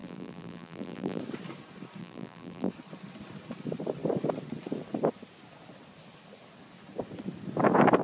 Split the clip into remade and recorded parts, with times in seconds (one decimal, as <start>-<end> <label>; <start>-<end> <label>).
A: 0.0-1.2 remade; 1.2-2.0 recorded; 2.0-2.7 remade; 2.7-8.0 recorded